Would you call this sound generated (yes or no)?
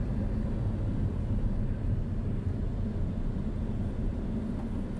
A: no